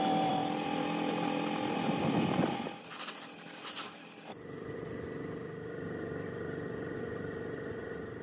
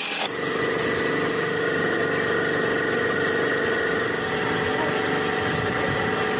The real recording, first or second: second